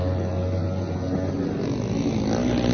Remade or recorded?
recorded